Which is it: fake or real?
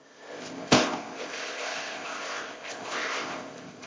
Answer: fake